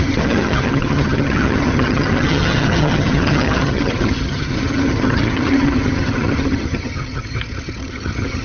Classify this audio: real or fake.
fake